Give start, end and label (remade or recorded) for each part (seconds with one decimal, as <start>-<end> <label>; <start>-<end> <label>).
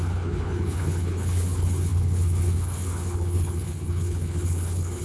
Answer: 0.0-5.0 remade